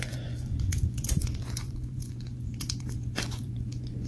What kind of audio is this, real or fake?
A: fake